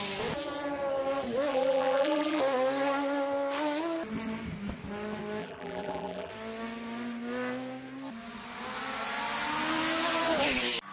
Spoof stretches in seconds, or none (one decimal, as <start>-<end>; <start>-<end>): 1.5-2.4; 5.4-6.3